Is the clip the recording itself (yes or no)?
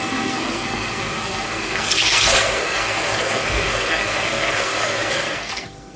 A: no